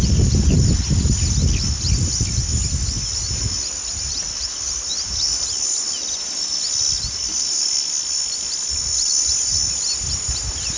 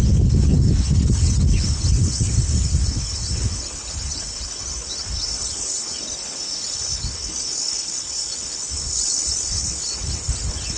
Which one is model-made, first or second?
second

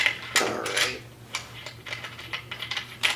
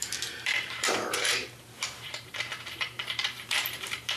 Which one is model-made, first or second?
second